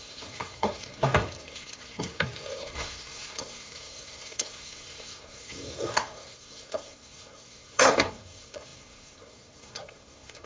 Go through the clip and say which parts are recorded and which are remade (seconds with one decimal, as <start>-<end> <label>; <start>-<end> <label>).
0.0-10.5 remade